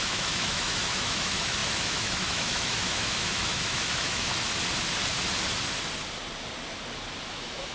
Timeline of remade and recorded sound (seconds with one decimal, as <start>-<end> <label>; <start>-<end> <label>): 0.0-4.3 remade; 4.3-7.3 recorded; 7.3-7.7 remade